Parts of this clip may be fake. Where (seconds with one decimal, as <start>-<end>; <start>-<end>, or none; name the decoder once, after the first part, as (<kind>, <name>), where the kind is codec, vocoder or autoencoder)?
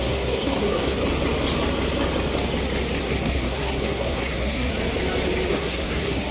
0.0-1.0 (codec, SNAC); 3.0-4.7; 5.5-6.3